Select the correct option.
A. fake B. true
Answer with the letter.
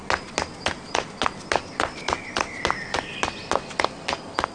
B